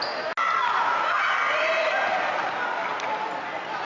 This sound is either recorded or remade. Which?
recorded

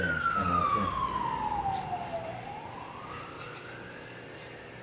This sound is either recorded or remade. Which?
recorded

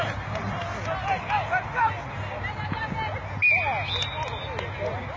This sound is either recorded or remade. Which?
recorded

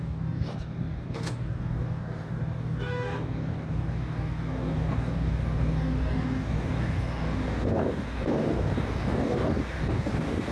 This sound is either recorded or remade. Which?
remade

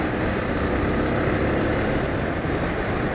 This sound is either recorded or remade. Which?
recorded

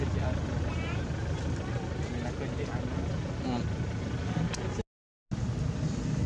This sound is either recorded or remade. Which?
recorded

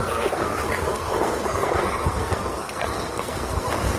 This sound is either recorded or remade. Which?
remade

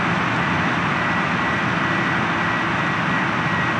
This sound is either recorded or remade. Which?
recorded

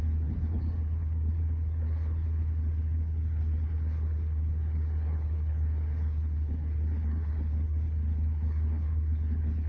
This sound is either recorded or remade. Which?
remade